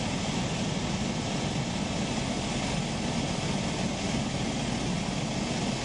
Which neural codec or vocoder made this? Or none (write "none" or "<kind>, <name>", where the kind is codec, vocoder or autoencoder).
none